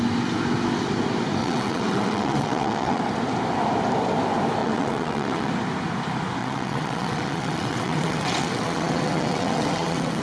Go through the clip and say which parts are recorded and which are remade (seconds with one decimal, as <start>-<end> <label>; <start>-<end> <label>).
0.0-1.4 recorded; 1.4-3.0 remade; 3.0-4.6 recorded; 4.6-5.5 remade; 5.5-6.4 recorded; 6.4-10.2 remade